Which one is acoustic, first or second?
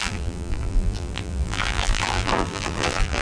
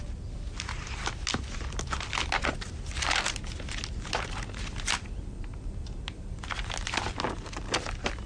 second